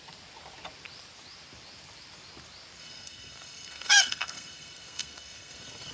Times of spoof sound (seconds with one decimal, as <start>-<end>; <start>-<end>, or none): 2.8-5.9